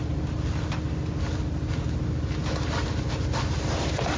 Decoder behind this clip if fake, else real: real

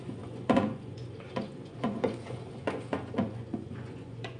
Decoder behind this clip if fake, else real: fake, vocoder, Vocos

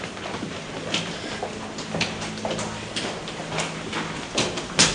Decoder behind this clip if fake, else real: real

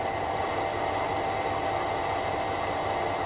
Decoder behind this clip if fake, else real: real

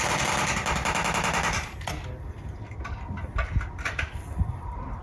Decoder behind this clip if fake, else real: real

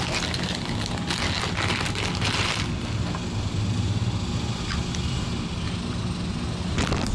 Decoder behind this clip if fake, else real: real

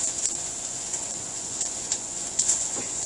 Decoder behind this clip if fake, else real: fake, vocoder, Vocos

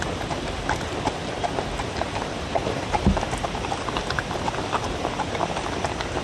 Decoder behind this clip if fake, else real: real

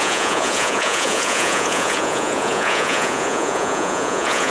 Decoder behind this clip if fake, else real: fake, vocoder, Vocos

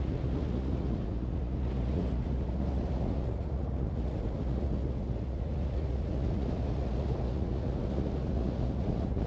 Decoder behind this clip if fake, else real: fake, vocoder, Vocos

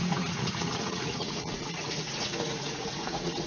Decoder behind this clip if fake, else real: fake, vocoder, Vocos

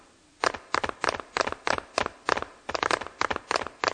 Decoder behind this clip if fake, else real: real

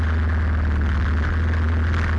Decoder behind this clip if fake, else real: real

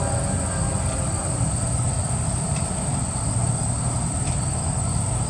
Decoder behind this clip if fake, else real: real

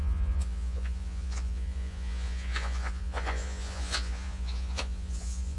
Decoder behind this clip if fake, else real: fake, vocoder, Vocos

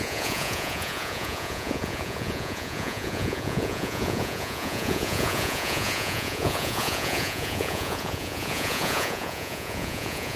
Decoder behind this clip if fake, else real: fake, vocoder, Vocos